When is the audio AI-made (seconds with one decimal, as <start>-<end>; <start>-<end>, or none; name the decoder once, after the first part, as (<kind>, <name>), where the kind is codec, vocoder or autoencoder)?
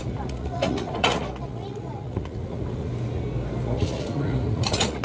0.0-2.9 (vocoder, Vocos); 3.6-5.0